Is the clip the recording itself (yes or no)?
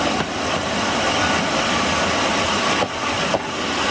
yes